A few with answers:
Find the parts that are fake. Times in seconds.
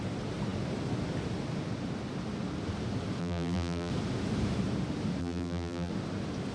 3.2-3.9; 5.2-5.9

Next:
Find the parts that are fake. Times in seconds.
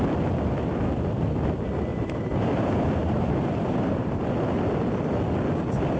1.9-4.3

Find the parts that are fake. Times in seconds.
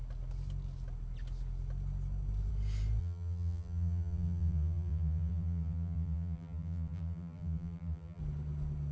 3.0-8.2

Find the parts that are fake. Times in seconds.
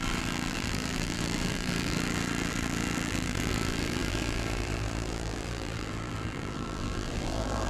0.0-7.7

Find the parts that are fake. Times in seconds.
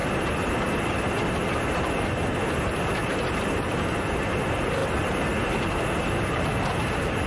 none